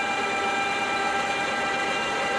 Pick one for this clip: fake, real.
fake